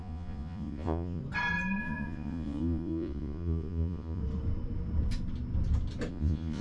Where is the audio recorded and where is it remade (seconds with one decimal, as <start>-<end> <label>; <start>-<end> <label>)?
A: 0.0-1.2 remade; 1.2-1.8 recorded; 1.8-4.2 remade; 4.2-6.1 recorded; 6.1-6.6 remade